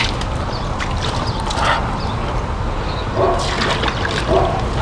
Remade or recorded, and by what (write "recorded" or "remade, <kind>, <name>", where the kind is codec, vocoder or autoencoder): recorded